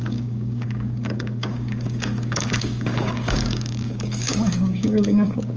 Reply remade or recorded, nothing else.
remade